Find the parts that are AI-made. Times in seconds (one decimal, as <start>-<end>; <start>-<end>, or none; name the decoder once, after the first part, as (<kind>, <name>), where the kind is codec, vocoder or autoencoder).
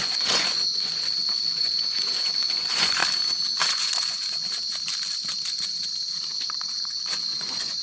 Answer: 0.0-3.0 (vocoder, Vocos); 3.7-4.4; 6.5-7.8